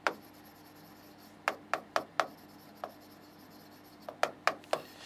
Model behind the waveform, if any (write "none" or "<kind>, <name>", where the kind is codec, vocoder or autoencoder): none